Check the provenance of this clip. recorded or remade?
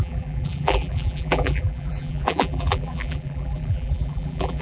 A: remade